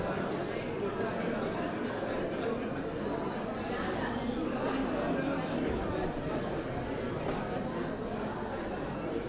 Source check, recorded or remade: recorded